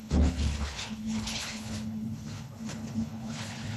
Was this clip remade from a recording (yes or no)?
yes